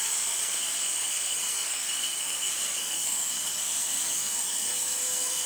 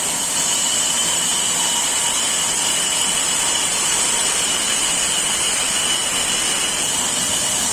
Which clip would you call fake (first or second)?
first